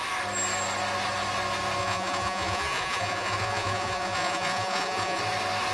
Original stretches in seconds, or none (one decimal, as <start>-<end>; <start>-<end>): 0.0-1.8; 5.2-5.7